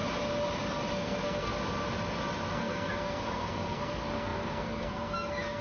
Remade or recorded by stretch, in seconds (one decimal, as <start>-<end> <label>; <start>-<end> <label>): 0.0-0.9 recorded; 0.9-1.5 remade; 1.5-2.5 recorded; 2.5-5.6 remade